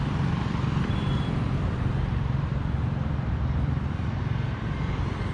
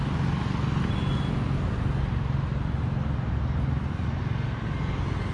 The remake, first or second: first